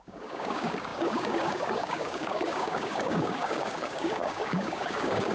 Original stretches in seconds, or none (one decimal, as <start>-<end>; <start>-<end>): none

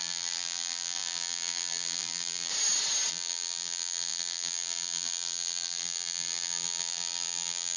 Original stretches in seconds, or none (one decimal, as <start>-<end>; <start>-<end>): 2.5-3.1

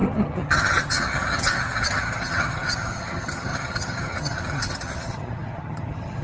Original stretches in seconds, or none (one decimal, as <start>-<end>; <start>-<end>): none

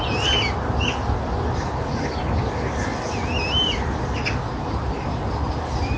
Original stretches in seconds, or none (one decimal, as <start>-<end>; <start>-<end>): 0.0-6.0